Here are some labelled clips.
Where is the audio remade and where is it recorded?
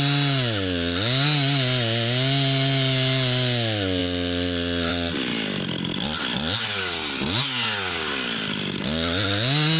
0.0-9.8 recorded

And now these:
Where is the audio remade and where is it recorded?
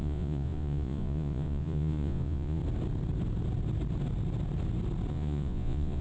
0.0-2.6 remade; 2.6-5.1 recorded; 5.1-6.0 remade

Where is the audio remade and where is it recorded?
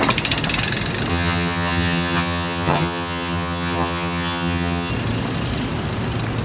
0.0-1.1 recorded; 1.1-4.9 remade; 4.9-6.4 recorded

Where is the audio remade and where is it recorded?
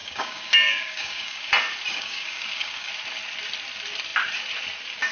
0.0-1.5 remade; 1.5-1.9 recorded; 1.9-2.9 remade; 2.9-5.1 recorded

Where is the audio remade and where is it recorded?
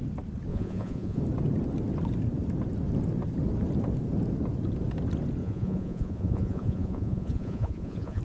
0.0-0.5 recorded; 0.5-1.2 remade; 1.2-5.4 recorded; 5.4-8.2 remade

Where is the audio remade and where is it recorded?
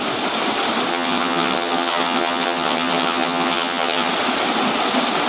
0.0-0.9 recorded; 0.9-4.1 remade; 4.1-5.3 recorded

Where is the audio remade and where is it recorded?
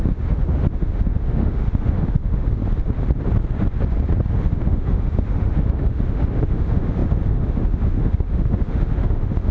0.0-2.6 remade; 2.6-4.3 recorded; 4.3-9.5 remade